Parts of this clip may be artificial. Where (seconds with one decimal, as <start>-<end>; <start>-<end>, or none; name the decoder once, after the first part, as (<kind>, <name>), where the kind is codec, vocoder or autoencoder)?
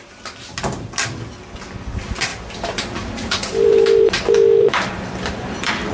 2.3-5.9 (vocoder, BigVGAN v2)